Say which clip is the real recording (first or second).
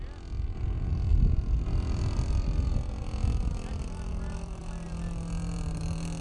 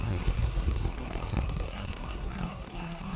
first